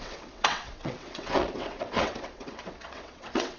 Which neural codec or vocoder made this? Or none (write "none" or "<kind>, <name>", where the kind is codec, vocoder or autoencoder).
vocoder, WaveNeXt